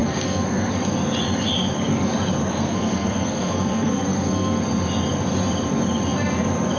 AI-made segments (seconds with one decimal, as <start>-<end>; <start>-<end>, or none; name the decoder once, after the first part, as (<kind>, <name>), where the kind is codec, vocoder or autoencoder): 0.0-0.7 (codec, SNAC); 2.5-4.6